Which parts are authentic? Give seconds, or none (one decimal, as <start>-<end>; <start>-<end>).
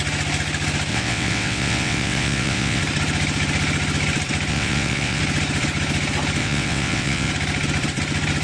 0.0-0.9; 2.8-4.5; 5.2-6.4; 7.3-8.4